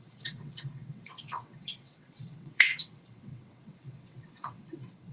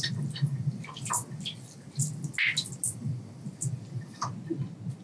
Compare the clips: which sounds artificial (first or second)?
first